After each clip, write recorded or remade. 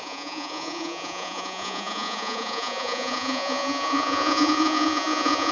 remade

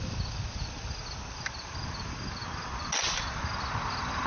recorded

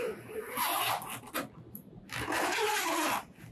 recorded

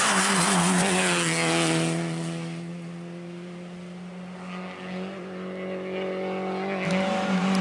recorded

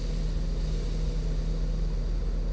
recorded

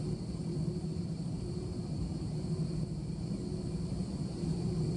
remade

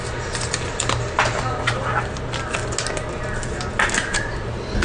recorded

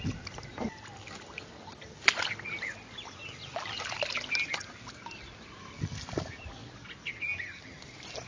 recorded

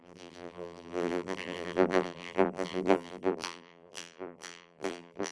remade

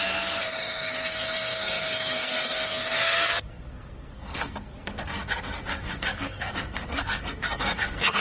remade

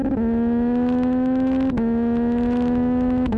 remade